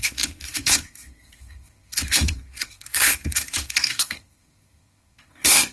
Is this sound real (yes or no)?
no